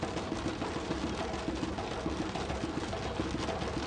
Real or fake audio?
real